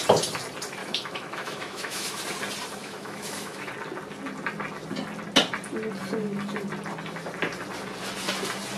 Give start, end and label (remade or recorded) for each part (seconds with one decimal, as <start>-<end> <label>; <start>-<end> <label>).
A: 0.0-0.8 recorded; 0.8-2.2 remade; 2.2-2.8 recorded; 2.8-3.7 remade; 3.7-8.8 recorded